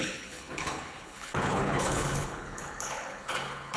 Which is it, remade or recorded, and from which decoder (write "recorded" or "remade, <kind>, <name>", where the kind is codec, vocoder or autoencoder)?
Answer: remade, codec, HILCodec